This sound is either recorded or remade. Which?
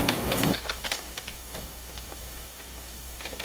remade